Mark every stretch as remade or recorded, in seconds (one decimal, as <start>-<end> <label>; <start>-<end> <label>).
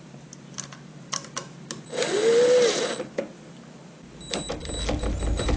0.0-5.6 recorded